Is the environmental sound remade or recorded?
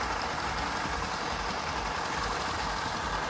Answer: recorded